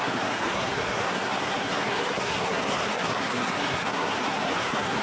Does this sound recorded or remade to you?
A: remade